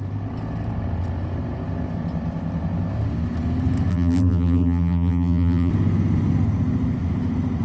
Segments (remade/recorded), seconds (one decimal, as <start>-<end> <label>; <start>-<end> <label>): 0.0-3.9 recorded; 3.9-5.7 remade; 5.7-7.6 recorded